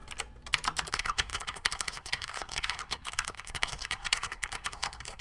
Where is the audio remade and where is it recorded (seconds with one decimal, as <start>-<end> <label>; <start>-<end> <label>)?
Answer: 0.0-0.9 recorded; 0.9-5.2 remade

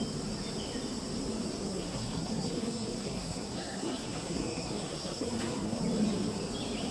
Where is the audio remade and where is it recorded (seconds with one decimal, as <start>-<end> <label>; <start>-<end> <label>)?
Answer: 0.0-1.7 recorded; 1.7-5.8 remade; 5.8-6.9 recorded

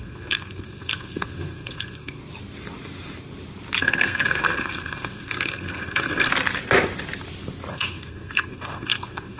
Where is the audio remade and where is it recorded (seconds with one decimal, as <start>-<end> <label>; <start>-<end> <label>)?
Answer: 0.0-2.2 remade; 2.2-3.8 recorded; 3.8-6.3 remade; 6.3-7.7 recorded; 7.7-9.4 remade

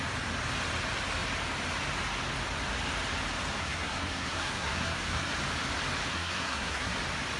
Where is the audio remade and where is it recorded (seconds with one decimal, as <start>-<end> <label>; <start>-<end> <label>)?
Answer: 0.0-3.6 recorded; 3.6-5.3 remade; 5.3-6.1 recorded; 6.1-7.0 remade; 7.0-7.4 recorded

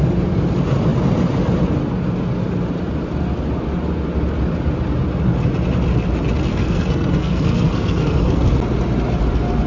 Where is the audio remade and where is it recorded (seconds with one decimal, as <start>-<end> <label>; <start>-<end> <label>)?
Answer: 0.0-6.5 recorded; 6.5-8.5 remade; 8.5-9.7 recorded

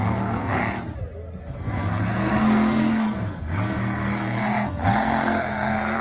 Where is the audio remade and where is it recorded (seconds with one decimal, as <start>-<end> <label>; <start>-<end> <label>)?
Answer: 0.0-0.6 remade; 0.6-1.4 recorded; 1.4-6.0 remade

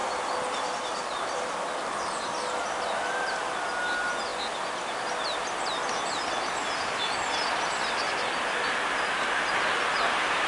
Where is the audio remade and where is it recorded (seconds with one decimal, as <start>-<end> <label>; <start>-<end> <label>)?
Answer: 0.0-10.5 recorded